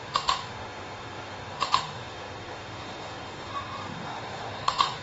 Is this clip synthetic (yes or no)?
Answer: yes